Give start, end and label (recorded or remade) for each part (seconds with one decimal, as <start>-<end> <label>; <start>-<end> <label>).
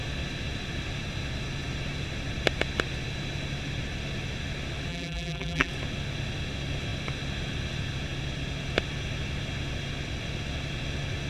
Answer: 0.0-4.9 recorded; 4.9-5.7 remade; 5.7-11.3 recorded